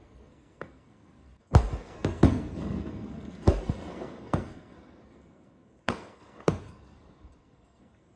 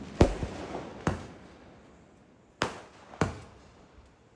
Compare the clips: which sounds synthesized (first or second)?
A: first